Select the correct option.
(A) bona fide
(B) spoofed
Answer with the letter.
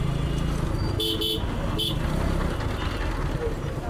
A